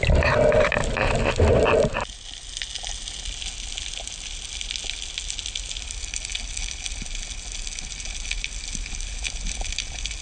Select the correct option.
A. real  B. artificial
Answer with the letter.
A